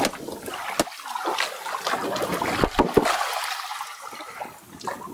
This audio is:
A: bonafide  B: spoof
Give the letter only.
A